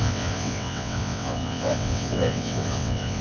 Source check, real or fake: fake